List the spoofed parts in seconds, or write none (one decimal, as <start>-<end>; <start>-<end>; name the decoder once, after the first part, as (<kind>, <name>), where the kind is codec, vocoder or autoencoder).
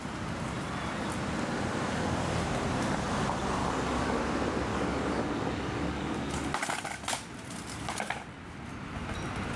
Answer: 3.6-4.2 (codec, DAC); 4.7-6.3